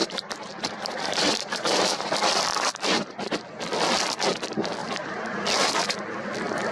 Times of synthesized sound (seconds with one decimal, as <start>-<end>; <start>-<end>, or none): 0.0-2.1; 4.8-5.5